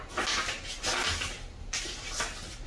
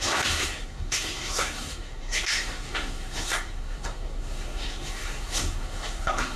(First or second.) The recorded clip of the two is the first